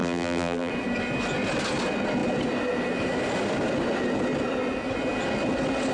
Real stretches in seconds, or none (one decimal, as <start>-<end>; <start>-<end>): 0.7-5.9